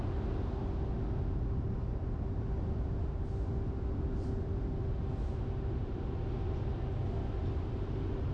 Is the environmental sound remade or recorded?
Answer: recorded